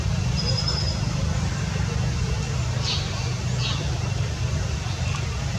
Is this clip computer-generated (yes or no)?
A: no